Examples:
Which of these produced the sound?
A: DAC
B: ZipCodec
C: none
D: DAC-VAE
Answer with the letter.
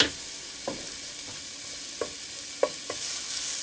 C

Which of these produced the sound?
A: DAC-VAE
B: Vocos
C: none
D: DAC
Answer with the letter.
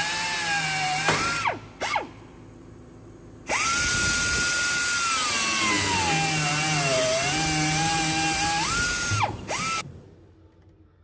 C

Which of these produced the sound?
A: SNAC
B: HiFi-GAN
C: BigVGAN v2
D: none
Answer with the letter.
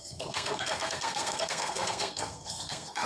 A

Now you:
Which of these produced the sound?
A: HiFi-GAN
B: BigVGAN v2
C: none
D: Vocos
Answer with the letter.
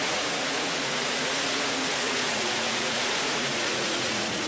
D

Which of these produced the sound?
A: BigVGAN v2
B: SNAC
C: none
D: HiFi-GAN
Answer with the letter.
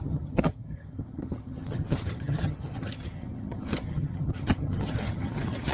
D